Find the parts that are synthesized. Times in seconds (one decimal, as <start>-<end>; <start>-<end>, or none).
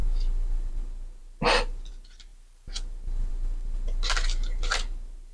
none